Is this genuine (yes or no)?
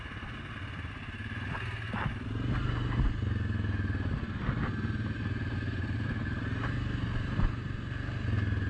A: yes